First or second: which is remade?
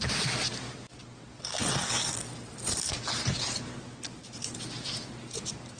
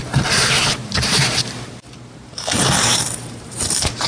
second